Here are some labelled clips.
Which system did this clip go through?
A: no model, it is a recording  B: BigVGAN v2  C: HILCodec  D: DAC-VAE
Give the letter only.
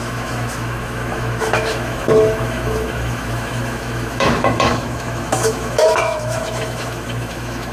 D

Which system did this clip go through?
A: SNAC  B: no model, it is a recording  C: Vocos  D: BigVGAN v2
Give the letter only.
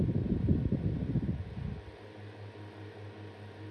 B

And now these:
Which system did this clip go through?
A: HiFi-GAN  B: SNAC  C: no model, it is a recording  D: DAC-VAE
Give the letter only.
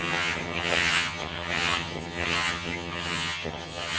A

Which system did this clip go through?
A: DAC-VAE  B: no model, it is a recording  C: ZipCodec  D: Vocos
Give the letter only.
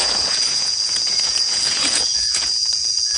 D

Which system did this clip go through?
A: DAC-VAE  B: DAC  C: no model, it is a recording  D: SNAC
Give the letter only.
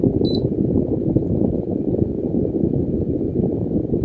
C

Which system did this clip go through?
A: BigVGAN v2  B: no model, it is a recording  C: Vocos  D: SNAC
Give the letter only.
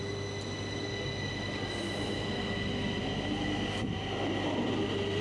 B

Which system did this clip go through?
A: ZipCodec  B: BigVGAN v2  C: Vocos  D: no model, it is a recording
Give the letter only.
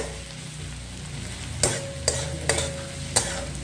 D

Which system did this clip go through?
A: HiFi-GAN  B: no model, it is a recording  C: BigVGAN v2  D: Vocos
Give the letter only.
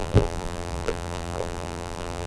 C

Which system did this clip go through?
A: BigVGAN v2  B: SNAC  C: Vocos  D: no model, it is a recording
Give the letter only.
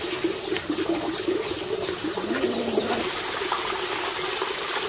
D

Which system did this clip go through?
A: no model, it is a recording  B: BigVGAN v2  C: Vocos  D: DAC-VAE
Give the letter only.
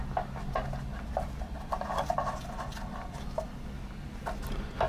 A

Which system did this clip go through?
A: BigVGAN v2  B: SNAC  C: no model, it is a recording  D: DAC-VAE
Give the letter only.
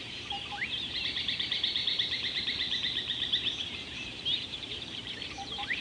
A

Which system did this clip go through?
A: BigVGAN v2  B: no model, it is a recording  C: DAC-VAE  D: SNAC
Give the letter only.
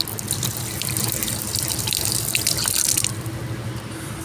B